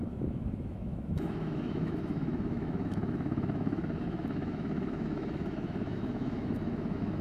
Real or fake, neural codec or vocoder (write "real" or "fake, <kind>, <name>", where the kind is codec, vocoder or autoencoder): fake, autoencoder, DAC-VAE